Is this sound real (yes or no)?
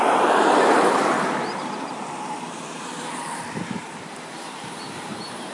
no